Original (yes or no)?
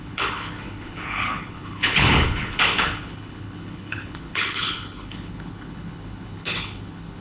no